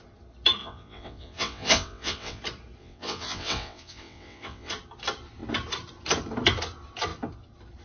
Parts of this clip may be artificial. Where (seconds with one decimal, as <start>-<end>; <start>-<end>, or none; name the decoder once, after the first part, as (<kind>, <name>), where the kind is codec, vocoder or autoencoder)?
0.6-2.4 (vocoder, WaveNeXt); 2.8-4.7